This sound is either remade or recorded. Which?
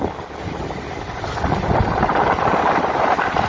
recorded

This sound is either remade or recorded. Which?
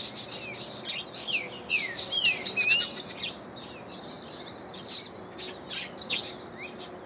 recorded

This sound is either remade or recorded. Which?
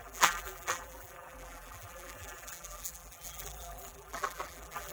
remade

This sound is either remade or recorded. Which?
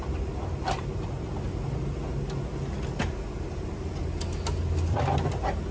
recorded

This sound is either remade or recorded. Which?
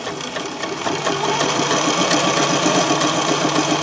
recorded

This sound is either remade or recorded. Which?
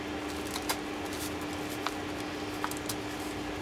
recorded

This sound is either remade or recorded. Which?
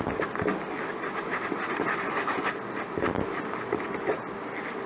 recorded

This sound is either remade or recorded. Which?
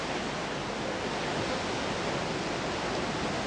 recorded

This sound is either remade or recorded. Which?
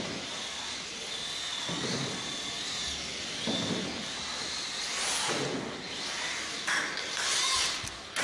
recorded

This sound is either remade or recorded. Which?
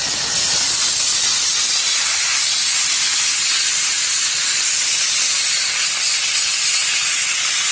recorded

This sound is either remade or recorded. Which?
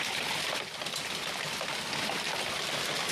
recorded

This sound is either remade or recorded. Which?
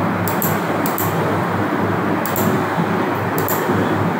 recorded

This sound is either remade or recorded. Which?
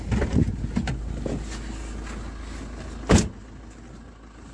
recorded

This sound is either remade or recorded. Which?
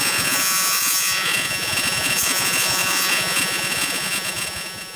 remade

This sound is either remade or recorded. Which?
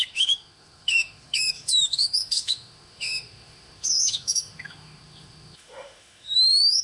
remade